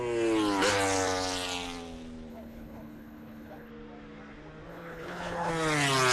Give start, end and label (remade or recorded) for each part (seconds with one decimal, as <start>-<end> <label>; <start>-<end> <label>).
0.0-2.3 recorded; 2.3-3.7 remade; 3.7-4.7 recorded; 4.7-5.5 remade; 5.5-6.1 recorded